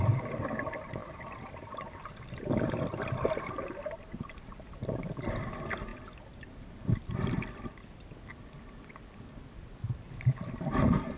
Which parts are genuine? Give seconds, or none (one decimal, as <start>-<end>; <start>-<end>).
0.0-11.2